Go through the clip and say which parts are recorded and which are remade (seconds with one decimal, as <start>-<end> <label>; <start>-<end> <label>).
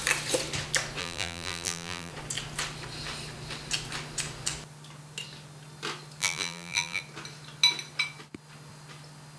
0.0-1.0 recorded; 1.0-2.1 remade; 2.1-6.2 recorded; 6.2-7.0 remade; 7.0-9.4 recorded